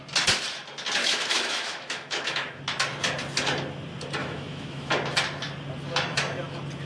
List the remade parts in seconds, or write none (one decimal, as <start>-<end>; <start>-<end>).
1.0-2.6; 4.2-4.9